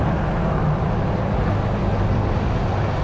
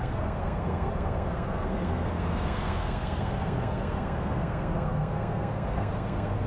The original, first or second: first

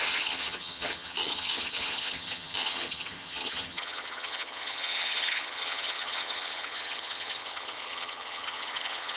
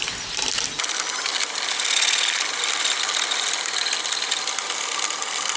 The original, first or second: second